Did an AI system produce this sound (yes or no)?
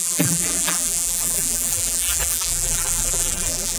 yes